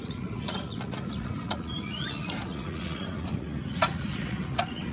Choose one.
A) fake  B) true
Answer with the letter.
A